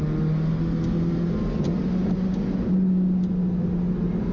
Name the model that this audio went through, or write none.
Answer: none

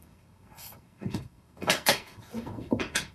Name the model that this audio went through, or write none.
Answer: codec, SNAC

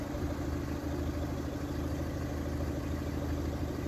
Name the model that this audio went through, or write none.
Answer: none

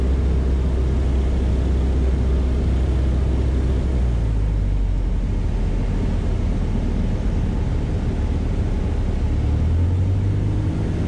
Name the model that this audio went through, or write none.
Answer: none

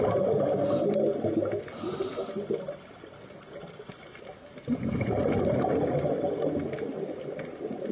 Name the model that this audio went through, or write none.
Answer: none